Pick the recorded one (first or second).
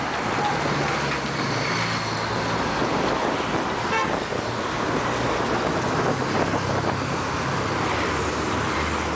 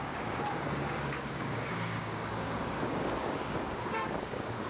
first